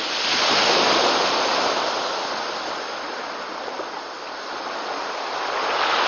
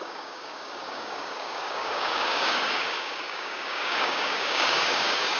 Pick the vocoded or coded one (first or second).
second